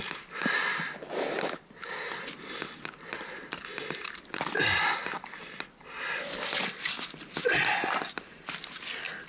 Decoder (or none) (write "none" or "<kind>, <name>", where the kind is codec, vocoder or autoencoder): none